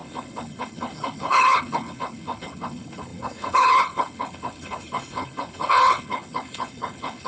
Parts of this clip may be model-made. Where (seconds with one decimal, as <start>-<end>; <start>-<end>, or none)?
0.0-7.3